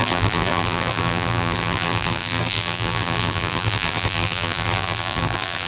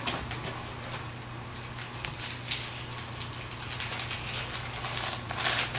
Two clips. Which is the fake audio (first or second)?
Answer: first